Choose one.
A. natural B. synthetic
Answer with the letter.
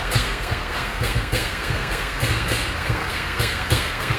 B